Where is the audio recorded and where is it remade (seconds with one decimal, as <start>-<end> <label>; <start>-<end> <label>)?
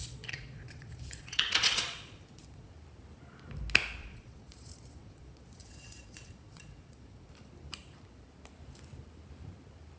0.0-2.7 remade; 2.7-4.0 recorded; 4.0-7.3 remade; 7.3-10.0 recorded